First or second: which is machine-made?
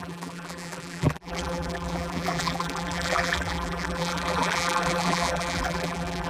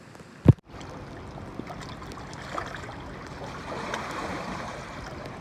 first